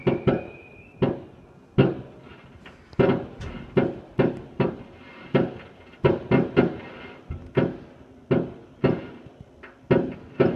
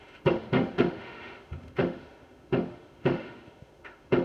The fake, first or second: second